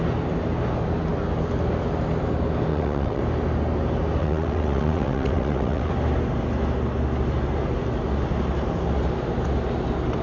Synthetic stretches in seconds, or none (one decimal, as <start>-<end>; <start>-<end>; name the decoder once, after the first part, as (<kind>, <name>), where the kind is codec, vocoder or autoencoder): 2.7-3.2 (vocoder, WaveNeXt); 4.2-5.9